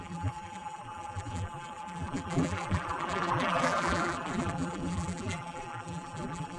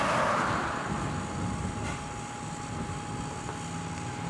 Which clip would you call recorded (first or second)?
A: second